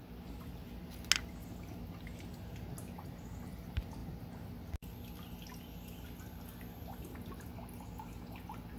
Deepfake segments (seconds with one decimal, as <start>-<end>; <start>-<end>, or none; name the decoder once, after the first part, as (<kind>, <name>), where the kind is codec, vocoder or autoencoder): none

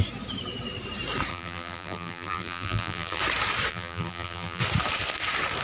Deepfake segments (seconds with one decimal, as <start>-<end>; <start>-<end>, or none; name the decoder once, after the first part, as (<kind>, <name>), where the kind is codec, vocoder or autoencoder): 1.3-3.2 (vocoder, BigVGAN v2); 3.7-4.6